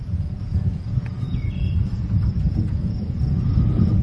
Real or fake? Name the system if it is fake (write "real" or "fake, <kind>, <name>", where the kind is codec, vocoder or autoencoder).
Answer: fake, vocoder, Vocos